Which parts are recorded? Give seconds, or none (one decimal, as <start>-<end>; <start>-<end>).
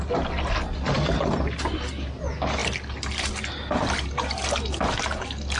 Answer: 0.0-5.6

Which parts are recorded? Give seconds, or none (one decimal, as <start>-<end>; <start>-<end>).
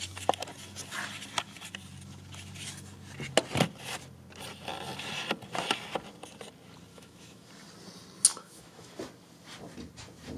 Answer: 0.0-6.9; 7.5-8.3; 8.9-10.4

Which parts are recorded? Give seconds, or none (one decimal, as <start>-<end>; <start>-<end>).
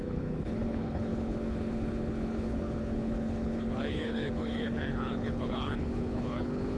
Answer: none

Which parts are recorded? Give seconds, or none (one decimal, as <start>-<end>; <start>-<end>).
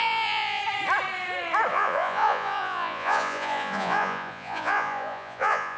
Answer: 0.6-1.7